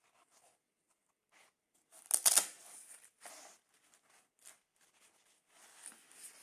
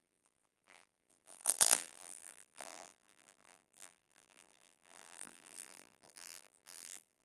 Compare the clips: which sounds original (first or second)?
first